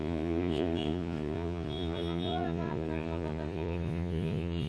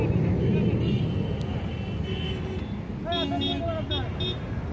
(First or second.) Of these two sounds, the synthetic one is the first